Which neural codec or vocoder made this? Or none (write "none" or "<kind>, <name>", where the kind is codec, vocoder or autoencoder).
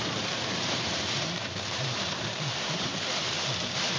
vocoder, BigVGAN v2